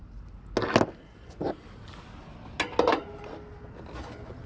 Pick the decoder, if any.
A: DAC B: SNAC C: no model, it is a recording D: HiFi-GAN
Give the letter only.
C